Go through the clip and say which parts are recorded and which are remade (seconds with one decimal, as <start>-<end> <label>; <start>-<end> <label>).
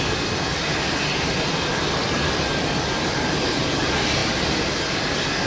0.0-5.5 recorded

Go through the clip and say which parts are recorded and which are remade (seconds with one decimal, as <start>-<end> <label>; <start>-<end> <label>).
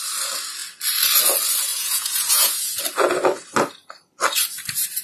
0.0-1.7 recorded; 1.7-2.8 remade; 2.8-5.0 recorded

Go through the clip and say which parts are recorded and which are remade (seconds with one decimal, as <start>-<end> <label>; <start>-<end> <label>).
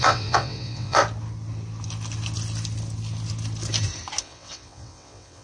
0.0-1.0 remade; 1.0-4.2 recorded; 4.2-5.4 remade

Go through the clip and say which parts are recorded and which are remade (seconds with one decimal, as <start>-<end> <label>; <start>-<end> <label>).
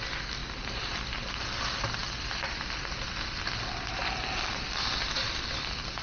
0.0-6.0 recorded